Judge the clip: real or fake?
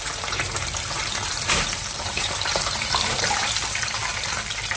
fake